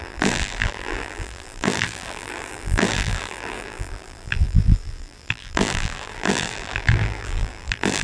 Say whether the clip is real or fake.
fake